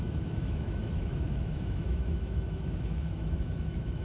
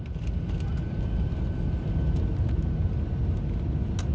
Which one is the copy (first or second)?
first